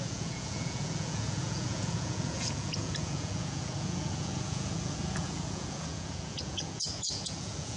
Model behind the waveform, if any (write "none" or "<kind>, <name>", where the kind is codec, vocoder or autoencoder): vocoder, Vocos